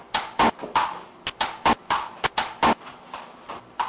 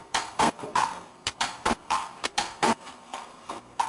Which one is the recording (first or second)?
first